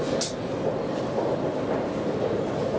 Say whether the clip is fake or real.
real